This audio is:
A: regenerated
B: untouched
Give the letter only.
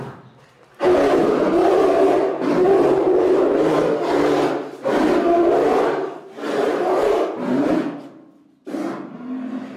B